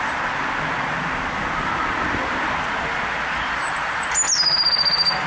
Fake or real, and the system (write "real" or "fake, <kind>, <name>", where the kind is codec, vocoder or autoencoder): real